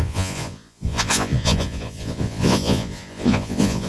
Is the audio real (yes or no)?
no